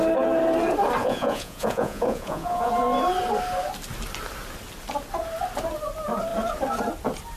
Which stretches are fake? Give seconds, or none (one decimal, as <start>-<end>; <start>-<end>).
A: 1.0-2.7